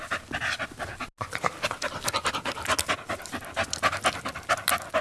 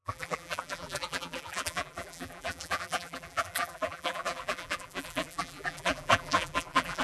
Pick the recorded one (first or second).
first